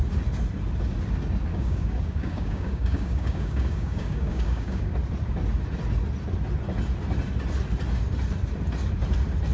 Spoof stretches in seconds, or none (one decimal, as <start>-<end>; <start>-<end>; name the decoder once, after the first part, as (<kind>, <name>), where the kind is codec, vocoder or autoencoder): 1.5-4.9 (codec, DAC)